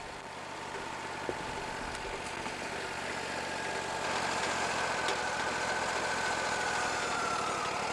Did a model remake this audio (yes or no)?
no